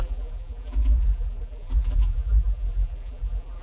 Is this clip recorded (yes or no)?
no